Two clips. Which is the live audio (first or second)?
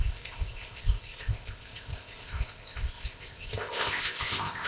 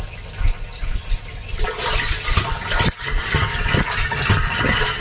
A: second